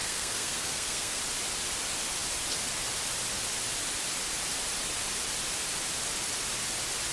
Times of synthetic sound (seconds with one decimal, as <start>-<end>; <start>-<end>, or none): 0.0-1.2

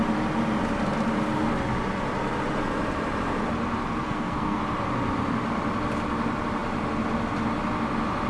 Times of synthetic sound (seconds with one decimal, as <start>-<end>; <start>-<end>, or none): 4.0-4.6

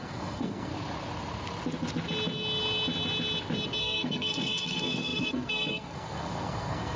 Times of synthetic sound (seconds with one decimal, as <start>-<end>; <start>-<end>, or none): 0.0-0.7; 3.8-7.0